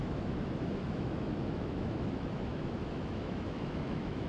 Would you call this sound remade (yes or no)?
yes